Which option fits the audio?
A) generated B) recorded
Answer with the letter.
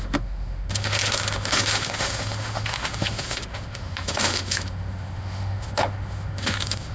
A